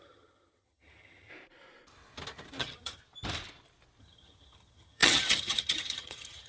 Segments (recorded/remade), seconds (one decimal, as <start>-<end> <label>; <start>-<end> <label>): 0.0-1.3 remade; 1.3-2.6 recorded; 2.6-3.0 remade; 3.0-4.0 recorded; 4.0-6.5 remade